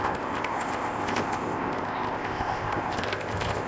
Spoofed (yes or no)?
yes